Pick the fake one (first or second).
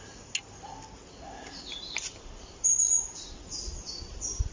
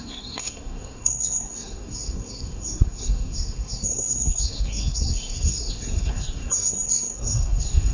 second